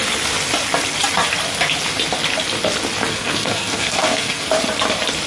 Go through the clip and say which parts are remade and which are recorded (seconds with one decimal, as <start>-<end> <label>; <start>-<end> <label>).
0.0-3.1 recorded; 3.1-4.6 remade; 4.6-5.3 recorded